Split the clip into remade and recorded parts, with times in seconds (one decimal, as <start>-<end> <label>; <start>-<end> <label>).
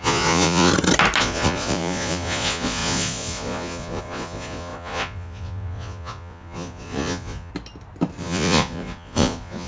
0.0-0.7 remade; 0.7-1.2 recorded; 1.2-7.5 remade; 7.5-8.2 recorded; 8.2-9.7 remade